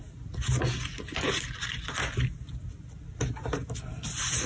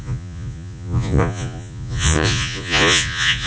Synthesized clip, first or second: second